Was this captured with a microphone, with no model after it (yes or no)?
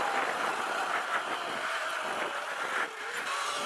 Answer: yes